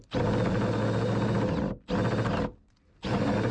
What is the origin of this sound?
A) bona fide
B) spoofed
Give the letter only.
A